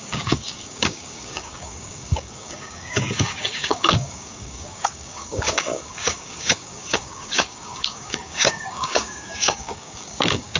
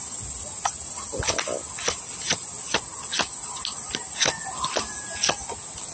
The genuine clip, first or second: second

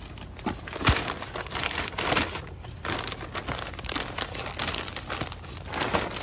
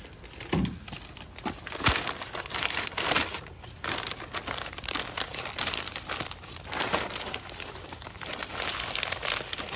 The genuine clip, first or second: first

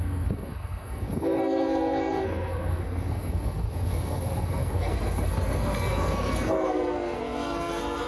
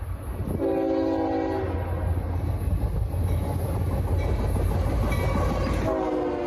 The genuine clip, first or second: second